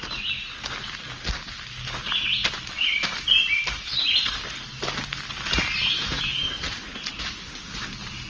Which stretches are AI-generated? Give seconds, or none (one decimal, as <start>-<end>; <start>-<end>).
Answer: none